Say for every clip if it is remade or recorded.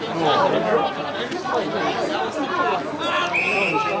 recorded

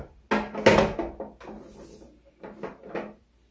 recorded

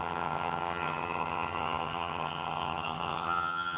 remade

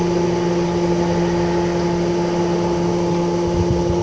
recorded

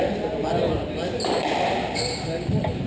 recorded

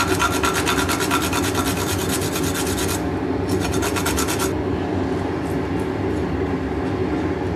recorded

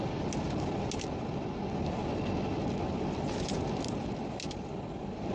recorded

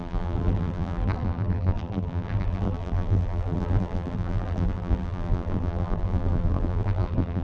remade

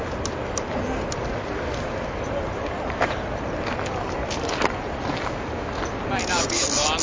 recorded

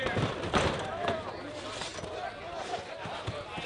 remade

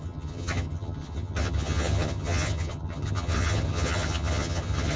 remade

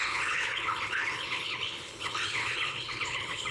remade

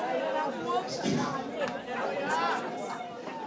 recorded